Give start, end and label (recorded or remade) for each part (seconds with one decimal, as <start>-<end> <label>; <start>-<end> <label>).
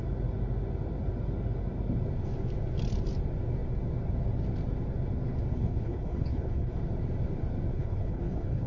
0.0-5.5 recorded; 5.5-6.8 remade; 6.8-7.7 recorded; 7.7-8.7 remade